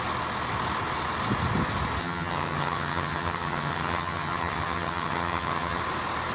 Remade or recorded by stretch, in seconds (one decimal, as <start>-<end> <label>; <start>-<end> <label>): 0.0-2.0 recorded; 2.0-5.8 remade; 5.8-6.3 recorded